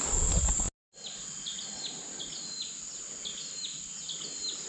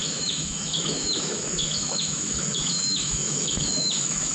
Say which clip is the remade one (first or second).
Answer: second